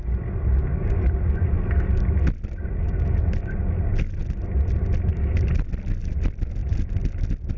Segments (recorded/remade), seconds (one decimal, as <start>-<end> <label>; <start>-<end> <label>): 0.0-7.6 recorded